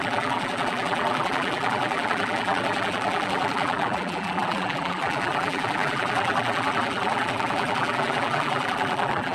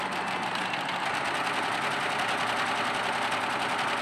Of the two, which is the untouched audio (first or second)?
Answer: second